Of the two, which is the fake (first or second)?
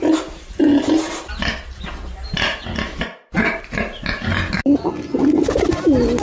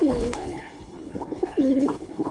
second